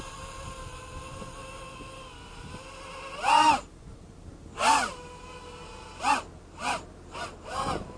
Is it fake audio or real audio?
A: real